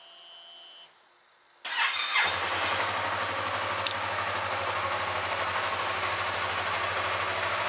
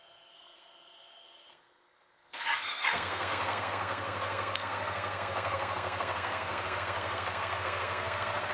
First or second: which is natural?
first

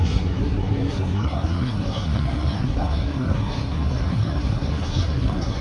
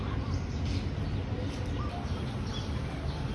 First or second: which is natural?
second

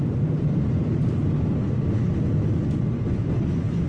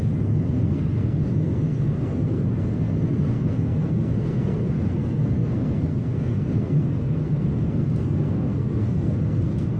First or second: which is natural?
first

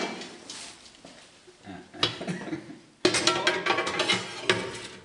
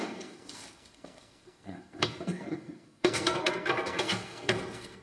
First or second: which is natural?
first